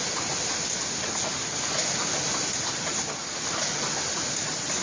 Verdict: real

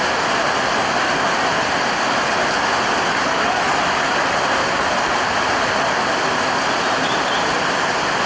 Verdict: real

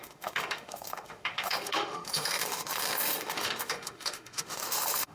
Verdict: fake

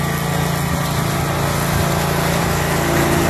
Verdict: real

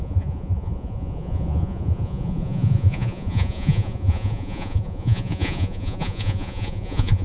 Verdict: fake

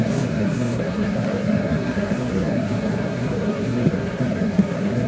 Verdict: fake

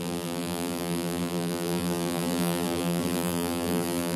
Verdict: fake